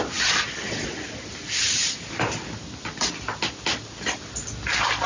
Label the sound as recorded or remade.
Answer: recorded